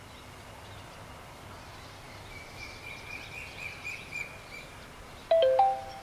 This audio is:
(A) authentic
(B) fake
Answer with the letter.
A